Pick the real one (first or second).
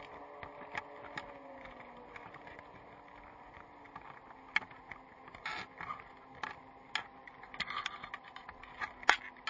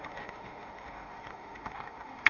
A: first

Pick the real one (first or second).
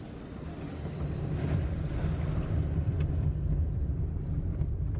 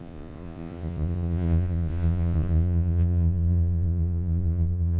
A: first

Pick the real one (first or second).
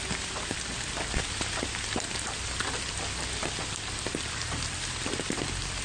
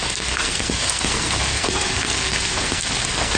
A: first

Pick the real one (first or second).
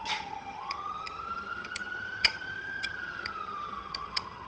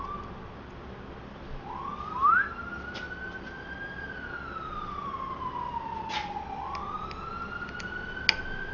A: second